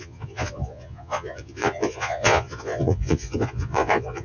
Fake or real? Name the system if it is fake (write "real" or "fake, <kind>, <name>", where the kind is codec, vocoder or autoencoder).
fake, vocoder, Vocos